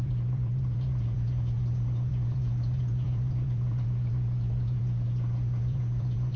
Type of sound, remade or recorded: remade